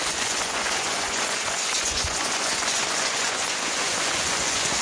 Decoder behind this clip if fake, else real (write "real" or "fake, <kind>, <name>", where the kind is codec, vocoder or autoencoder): fake, vocoder, Vocos